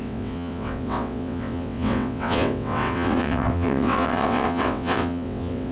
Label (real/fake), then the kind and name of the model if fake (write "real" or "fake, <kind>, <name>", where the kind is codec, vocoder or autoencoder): fake, vocoder, WaveNeXt